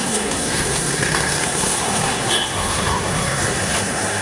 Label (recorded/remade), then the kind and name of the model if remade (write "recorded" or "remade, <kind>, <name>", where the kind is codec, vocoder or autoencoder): remade, codec, SNAC